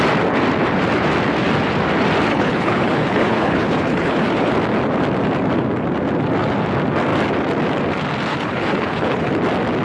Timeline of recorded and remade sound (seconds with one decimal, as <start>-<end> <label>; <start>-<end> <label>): 0.0-2.3 recorded; 2.3-4.5 remade; 4.5-8.3 recorded; 8.3-9.3 remade; 9.3-9.8 recorded